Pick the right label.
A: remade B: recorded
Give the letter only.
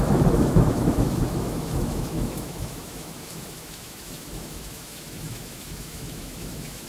A